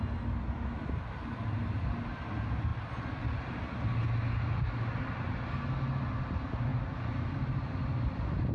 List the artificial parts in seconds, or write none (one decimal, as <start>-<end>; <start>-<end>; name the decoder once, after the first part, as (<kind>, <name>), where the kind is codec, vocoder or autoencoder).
6.7-8.0 (vocoder, BigVGAN v2)